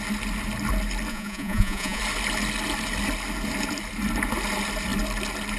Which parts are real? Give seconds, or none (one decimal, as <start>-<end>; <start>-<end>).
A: 0.0-1.1; 2.0-5.6